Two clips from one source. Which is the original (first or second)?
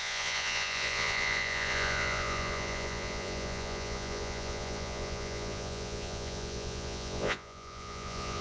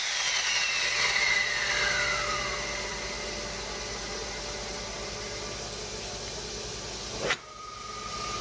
second